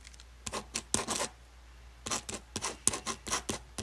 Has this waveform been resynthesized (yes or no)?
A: no